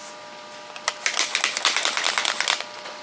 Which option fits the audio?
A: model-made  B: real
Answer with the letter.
B